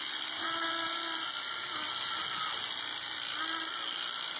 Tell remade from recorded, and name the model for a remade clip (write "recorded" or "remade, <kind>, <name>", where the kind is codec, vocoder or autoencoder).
recorded